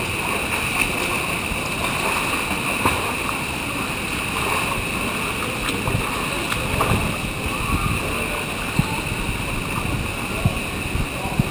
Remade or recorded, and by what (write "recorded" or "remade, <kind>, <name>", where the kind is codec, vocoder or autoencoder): recorded